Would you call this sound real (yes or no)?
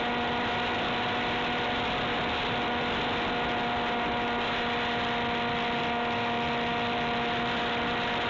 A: no